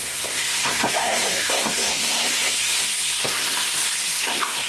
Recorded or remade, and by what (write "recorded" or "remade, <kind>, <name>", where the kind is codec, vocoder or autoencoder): remade, codec, SNAC